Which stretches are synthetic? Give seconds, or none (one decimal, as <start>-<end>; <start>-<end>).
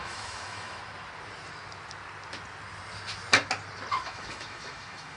0.0-0.8; 3.9-5.2